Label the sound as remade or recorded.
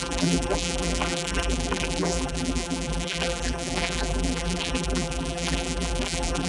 remade